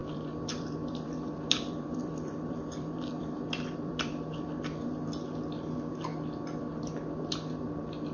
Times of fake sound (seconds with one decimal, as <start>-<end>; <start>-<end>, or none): 0.0-4.9